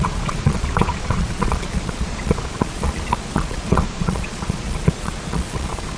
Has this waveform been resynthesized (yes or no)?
yes